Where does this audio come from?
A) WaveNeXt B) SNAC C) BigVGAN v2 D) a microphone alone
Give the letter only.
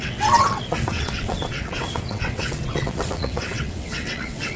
A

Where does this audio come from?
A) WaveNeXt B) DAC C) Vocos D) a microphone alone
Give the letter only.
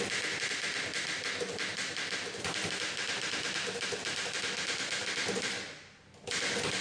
D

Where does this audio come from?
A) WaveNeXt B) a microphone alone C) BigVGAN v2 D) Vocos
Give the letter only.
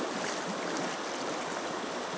B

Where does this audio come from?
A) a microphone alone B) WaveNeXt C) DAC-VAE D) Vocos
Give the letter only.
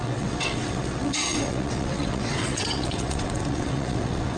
B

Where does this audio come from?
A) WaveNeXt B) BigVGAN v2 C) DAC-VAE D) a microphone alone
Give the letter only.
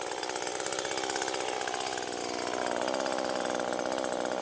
D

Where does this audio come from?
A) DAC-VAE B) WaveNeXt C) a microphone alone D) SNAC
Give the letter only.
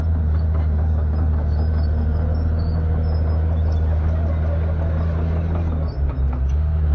C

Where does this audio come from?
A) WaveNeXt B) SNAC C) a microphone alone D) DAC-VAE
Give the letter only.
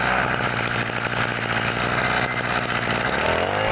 C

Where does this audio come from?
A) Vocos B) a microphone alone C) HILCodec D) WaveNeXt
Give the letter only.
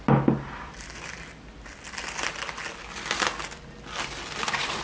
B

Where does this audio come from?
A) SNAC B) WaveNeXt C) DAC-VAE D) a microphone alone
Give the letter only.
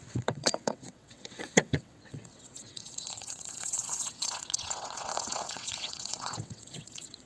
B